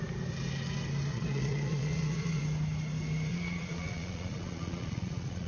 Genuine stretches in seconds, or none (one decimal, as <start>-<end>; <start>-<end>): 0.0-1.1; 2.4-3.3